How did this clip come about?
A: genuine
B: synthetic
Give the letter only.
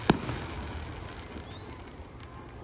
A